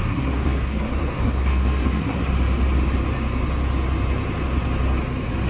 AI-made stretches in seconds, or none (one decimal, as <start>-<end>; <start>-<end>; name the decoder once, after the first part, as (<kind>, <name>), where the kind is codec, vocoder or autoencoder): 0.0-2.3 (codec, SNAC)